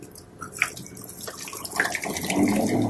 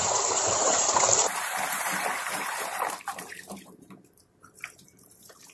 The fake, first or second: second